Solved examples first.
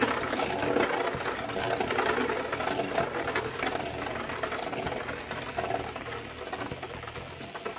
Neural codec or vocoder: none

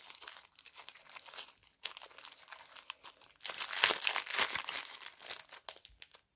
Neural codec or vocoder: none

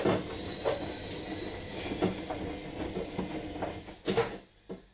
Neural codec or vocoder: none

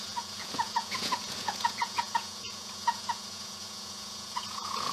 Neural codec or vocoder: vocoder, Vocos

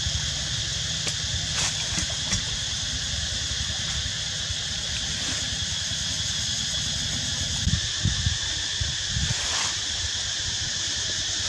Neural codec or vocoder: none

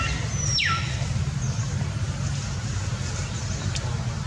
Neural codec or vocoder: none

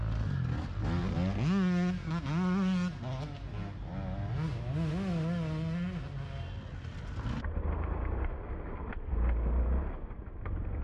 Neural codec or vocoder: none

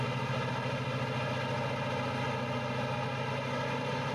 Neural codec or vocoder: none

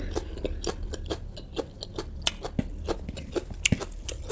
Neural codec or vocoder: none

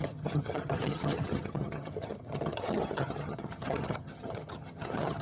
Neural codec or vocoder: vocoder, HiFi-GAN